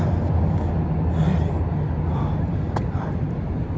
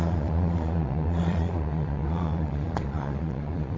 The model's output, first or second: second